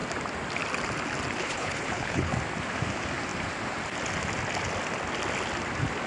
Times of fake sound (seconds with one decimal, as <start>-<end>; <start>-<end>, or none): 1.4-2.3